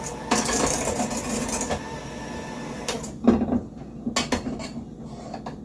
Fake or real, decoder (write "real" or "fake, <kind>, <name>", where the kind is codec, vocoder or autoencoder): real